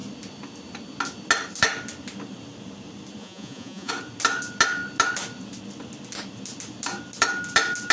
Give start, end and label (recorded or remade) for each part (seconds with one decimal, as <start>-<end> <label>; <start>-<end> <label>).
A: 0.0-3.2 recorded; 3.2-3.9 remade; 3.9-7.9 recorded